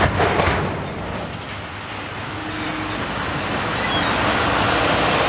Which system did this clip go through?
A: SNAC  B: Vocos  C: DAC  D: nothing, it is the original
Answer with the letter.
D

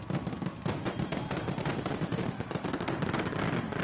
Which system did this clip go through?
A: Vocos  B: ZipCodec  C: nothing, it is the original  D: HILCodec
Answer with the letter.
C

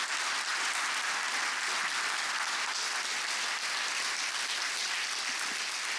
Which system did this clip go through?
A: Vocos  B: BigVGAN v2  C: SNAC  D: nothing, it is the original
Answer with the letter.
D